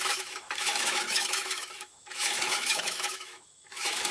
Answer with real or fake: fake